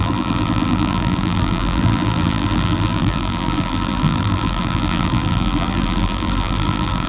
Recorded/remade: remade